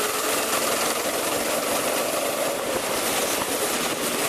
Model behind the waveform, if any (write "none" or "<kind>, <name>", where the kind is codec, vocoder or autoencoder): none